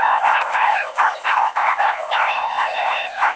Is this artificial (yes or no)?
yes